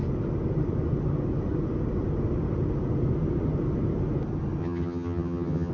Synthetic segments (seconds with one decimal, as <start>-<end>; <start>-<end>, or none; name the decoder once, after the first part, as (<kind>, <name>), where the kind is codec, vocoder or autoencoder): 4.6-5.7 (vocoder, HiFi-GAN)